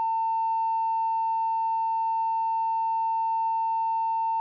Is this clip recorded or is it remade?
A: recorded